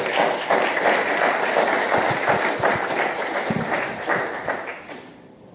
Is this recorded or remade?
recorded